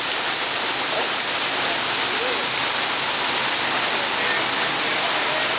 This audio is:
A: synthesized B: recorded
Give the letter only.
B